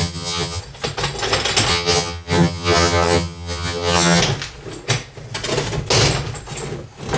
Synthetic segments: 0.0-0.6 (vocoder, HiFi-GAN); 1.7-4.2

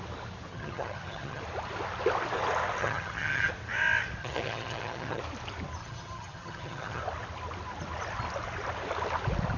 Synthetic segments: 0.5-1.4 (vocoder, HiFi-GAN); 2.8-3.5; 4.2-5.2; 5.8-7.0

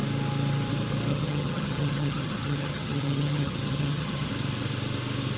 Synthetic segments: 1.1-4.3 (vocoder, HiFi-GAN)

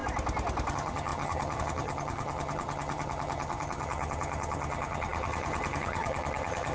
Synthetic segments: 0.7-6.7 (vocoder, HiFi-GAN)

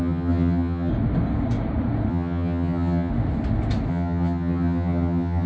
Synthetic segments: 0.0-0.9 (vocoder, HiFi-GAN); 2.1-3.1; 3.9-5.5

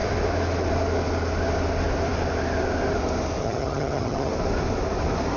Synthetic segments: 3.4-4.3 (vocoder, HiFi-GAN)

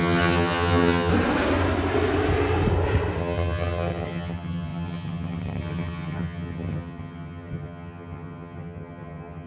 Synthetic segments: 0.0-1.1 (vocoder, HiFi-GAN); 3.2-9.5

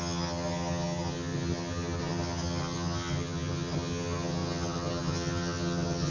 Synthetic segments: 0.0-6.1 (vocoder, HiFi-GAN)